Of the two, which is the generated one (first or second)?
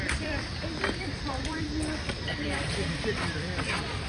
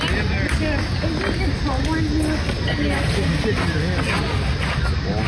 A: first